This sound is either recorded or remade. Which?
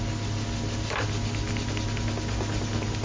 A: recorded